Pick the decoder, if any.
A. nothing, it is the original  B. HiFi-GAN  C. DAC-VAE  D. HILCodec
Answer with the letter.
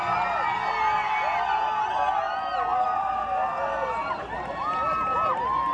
A